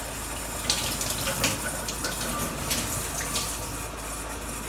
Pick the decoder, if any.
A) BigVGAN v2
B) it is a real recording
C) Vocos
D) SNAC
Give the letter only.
B